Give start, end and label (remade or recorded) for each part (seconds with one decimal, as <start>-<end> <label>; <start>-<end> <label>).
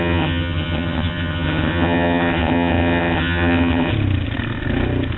0.0-3.9 remade; 3.9-5.2 recorded